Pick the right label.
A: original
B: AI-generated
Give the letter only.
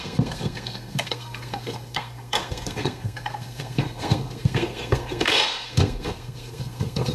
B